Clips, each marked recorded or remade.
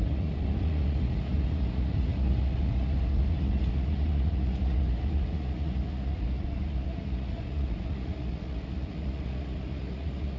remade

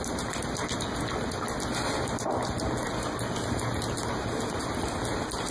recorded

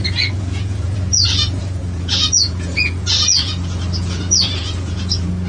remade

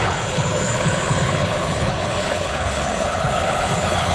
remade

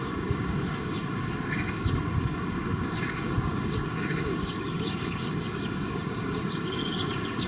remade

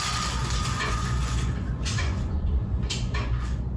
remade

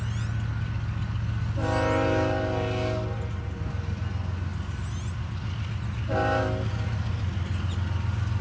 recorded